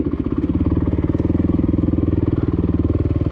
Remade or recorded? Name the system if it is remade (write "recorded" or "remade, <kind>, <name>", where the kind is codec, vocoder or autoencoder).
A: recorded